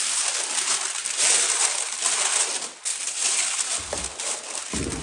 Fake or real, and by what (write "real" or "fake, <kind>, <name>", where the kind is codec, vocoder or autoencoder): real